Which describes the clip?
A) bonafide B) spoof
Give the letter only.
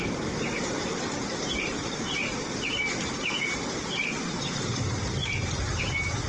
A